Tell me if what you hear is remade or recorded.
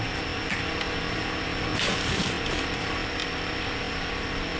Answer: recorded